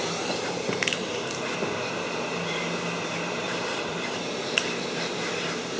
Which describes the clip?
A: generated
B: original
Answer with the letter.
A